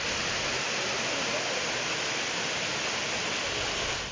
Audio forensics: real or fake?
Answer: real